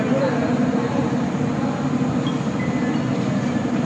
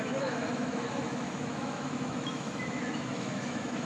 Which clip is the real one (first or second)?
first